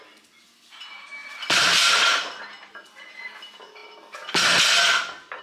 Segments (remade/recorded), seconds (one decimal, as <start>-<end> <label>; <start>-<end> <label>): 0.0-1.2 recorded; 1.2-2.4 remade; 2.4-5.4 recorded